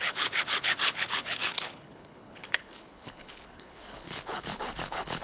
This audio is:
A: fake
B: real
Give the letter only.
A